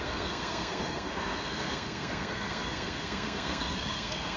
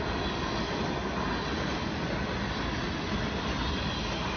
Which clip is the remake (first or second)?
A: first